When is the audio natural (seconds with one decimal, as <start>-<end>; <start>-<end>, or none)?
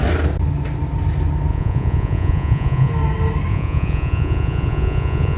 0.0-1.5; 2.9-3.5